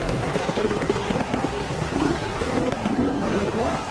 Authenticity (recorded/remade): remade